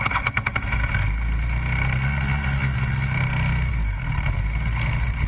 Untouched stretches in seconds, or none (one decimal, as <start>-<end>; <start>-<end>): 0.0-5.3